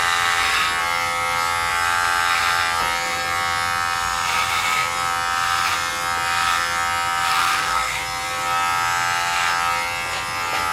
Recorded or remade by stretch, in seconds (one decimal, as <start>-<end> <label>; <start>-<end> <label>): 0.0-7.3 recorded; 7.3-8.0 remade; 8.0-10.7 recorded